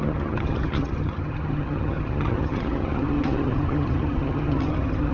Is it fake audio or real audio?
fake